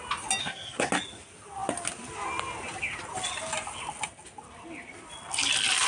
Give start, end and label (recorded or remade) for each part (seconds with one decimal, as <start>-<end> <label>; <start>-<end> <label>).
0.0-0.4 recorded; 0.4-0.9 remade; 0.9-5.9 recorded